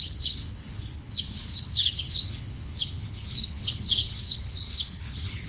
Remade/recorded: remade